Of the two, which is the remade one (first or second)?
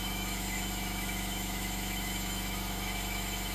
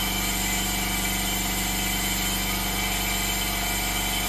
first